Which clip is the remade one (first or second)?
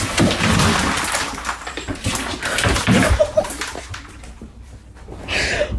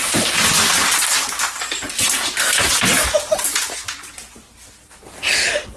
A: first